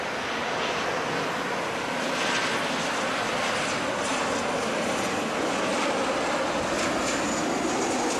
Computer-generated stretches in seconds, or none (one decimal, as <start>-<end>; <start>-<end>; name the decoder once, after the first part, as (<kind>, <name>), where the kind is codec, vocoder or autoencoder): none